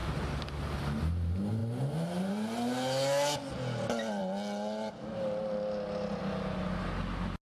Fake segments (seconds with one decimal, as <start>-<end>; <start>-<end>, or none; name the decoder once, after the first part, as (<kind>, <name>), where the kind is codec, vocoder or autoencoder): none